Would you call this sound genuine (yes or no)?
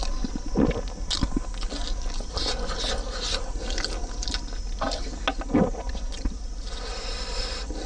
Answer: yes